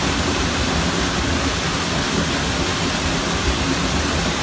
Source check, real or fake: real